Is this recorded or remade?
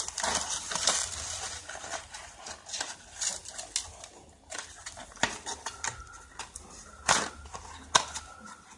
recorded